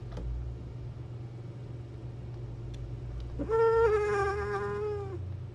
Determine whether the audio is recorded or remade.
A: recorded